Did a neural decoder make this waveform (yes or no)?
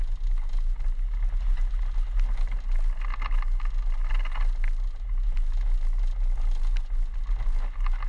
no